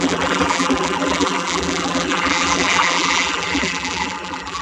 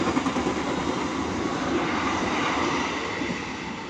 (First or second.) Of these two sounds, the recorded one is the second